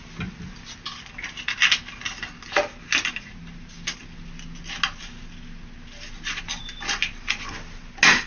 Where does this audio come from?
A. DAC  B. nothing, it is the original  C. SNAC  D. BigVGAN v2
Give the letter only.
B